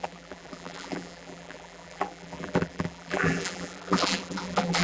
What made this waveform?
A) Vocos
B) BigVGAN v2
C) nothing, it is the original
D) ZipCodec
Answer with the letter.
B